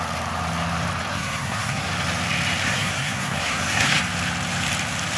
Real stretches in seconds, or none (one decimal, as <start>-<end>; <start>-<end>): 0.0-1.1; 1.9-2.6; 4.0-5.2